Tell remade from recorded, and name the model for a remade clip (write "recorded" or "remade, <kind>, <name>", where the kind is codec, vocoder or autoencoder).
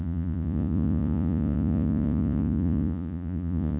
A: remade, vocoder, Vocos